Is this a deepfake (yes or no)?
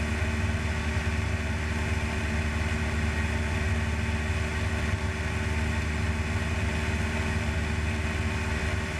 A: no